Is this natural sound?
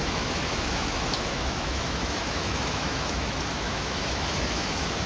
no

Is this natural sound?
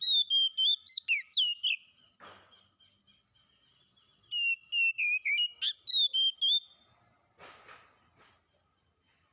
yes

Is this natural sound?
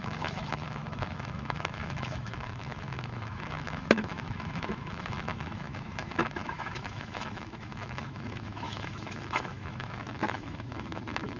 no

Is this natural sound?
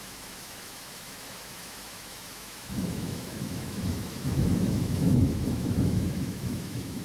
no